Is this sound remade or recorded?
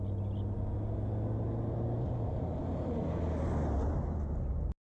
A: recorded